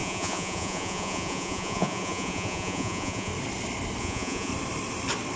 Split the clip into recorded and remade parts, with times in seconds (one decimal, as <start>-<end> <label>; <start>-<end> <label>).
0.0-3.3 remade; 3.3-4.0 recorded; 4.0-4.5 remade; 4.5-5.4 recorded